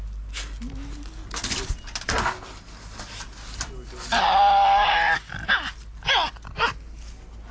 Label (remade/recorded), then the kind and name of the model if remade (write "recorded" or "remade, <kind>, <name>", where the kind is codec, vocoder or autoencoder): recorded